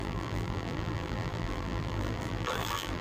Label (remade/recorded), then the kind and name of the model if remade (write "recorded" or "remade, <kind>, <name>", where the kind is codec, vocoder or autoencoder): remade, vocoder, BigVGAN v2